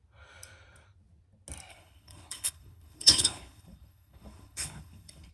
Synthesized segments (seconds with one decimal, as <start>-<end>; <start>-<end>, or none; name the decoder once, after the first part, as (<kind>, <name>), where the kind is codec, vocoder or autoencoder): 1.7-5.3 (codec, HILCodec)

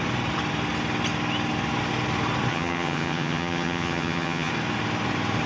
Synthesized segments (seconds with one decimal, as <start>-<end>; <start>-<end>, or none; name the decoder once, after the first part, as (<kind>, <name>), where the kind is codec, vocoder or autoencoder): 2.5-4.5 (vocoder, HiFi-GAN)

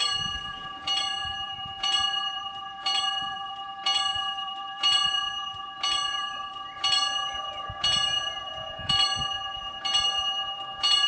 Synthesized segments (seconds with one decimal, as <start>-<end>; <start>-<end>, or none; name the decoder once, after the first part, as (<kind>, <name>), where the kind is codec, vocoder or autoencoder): 0.0-11.1 (vocoder, BigVGAN v2)